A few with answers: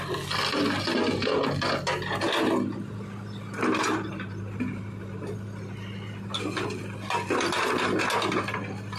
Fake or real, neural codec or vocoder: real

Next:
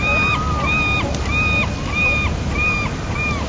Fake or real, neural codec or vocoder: real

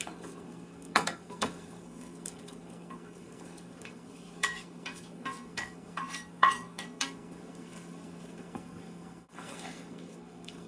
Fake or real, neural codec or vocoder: fake, codec, SNAC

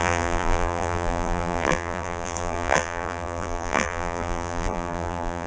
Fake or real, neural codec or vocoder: fake, vocoder, BigVGAN v2